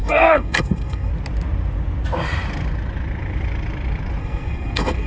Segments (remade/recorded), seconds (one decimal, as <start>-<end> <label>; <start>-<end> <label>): 0.0-1.1 remade; 1.1-4.2 recorded; 4.2-5.1 remade